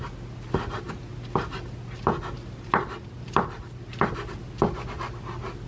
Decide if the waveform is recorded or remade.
recorded